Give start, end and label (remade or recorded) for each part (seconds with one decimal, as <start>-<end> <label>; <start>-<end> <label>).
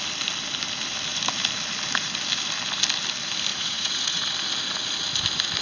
0.0-3.5 recorded; 3.5-4.3 remade; 4.3-5.6 recorded